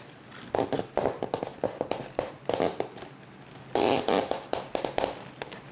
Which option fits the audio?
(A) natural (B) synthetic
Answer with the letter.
A